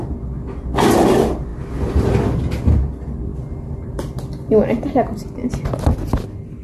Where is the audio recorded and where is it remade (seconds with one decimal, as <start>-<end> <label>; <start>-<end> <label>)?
0.0-6.6 recorded